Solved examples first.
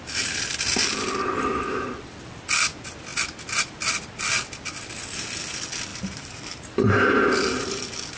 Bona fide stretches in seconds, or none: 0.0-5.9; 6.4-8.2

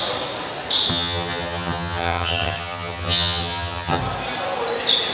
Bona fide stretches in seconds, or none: 0.0-0.9; 4.0-5.1

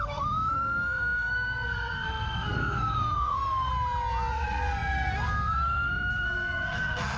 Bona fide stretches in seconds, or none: 3.7-4.3

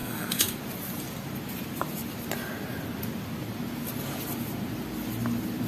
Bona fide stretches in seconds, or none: 0.6-5.7